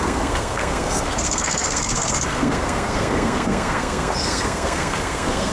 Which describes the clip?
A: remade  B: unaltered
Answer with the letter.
A